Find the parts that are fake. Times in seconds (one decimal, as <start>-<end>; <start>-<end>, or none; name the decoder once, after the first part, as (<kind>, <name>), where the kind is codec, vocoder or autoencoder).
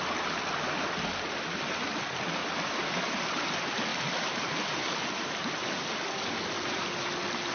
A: 2.4-3.5 (vocoder, BigVGAN v2); 3.9-6.4